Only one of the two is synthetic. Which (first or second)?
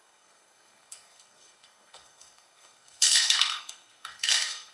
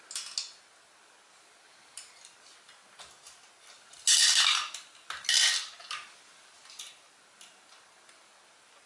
first